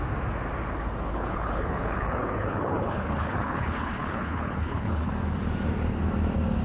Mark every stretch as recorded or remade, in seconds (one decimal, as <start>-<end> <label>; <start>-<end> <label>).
0.0-1.1 recorded; 1.1-5.1 remade; 5.1-6.6 recorded